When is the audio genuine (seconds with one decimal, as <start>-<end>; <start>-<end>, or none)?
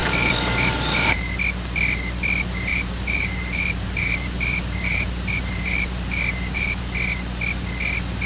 1.2-2.7; 6.8-8.3